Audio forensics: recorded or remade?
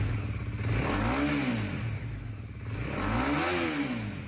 recorded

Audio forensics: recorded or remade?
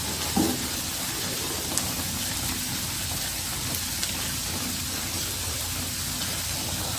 recorded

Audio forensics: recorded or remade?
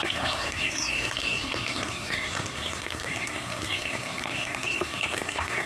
remade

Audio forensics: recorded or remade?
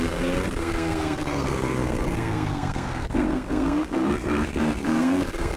remade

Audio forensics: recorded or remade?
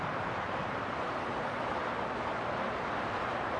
remade